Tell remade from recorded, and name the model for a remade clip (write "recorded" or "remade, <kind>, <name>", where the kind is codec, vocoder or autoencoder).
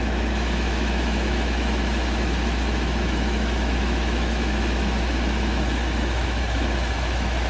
remade, autoencoder, DAC-VAE